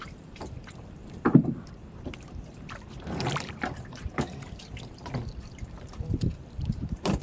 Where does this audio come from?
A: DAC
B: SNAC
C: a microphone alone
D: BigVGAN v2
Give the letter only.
D